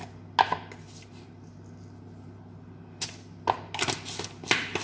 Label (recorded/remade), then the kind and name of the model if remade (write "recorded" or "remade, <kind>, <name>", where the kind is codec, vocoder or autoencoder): recorded